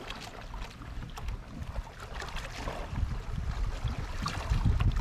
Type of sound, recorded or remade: recorded